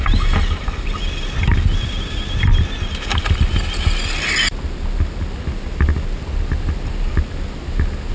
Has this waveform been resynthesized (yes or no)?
no